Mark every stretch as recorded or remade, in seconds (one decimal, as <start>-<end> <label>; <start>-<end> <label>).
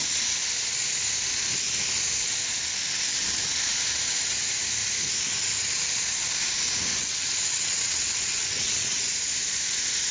0.0-6.9 recorded; 6.9-9.1 remade; 9.1-10.1 recorded